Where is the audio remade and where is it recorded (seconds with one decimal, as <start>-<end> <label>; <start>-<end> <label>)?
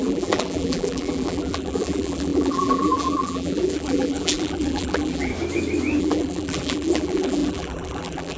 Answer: 0.0-5.3 remade; 5.3-6.0 recorded; 6.0-8.4 remade